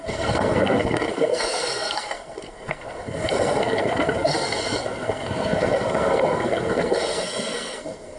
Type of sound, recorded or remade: remade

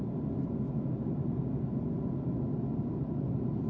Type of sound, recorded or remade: recorded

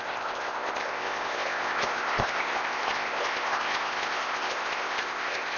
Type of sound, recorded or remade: remade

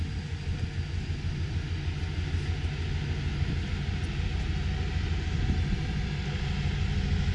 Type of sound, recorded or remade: recorded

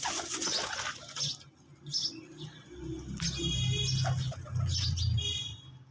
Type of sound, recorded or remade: recorded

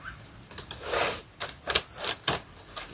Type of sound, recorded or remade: recorded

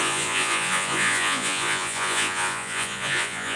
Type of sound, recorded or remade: remade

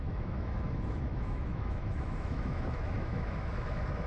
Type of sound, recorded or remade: remade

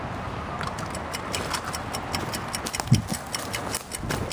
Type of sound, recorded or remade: recorded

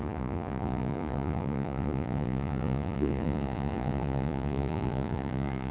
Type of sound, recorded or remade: remade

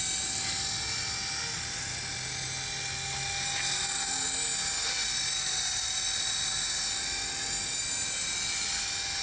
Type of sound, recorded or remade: recorded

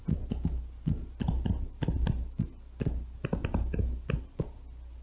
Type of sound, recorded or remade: recorded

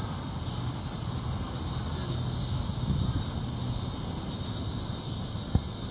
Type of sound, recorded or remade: recorded